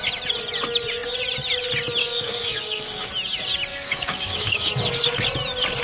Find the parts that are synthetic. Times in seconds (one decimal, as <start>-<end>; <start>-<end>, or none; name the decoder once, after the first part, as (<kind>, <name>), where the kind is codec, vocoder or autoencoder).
2.0-3.1 (codec, DAC); 3.7-4.7